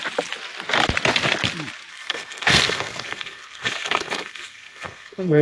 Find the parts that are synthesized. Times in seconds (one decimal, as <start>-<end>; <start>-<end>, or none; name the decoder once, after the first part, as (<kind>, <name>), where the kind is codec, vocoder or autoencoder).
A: 1.9-5.4 (codec, SNAC)